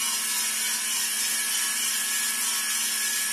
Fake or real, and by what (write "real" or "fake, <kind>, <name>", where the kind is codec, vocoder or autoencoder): real